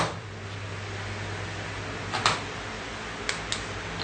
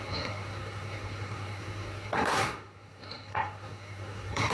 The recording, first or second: first